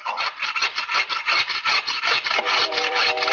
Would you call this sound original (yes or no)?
no